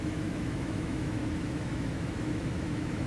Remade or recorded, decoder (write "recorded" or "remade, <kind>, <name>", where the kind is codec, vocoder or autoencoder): remade, autoencoder, DAC-VAE